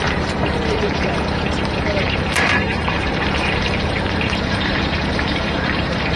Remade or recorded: remade